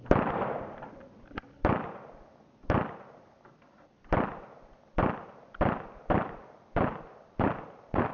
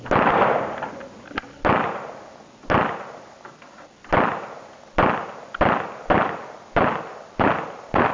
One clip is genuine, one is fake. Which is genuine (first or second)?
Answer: second